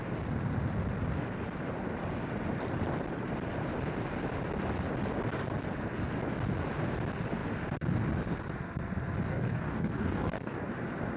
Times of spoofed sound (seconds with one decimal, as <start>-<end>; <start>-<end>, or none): 9.3-10.7